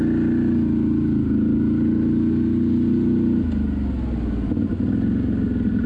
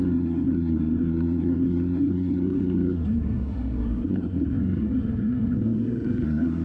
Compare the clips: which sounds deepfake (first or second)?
second